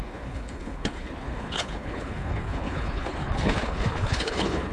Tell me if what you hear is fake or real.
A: fake